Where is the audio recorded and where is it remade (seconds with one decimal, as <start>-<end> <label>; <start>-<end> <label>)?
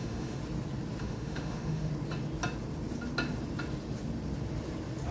0.0-0.4 remade; 0.4-1.0 recorded; 1.0-1.9 remade; 1.9-5.1 recorded